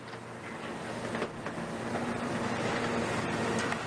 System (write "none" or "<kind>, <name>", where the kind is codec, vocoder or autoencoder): none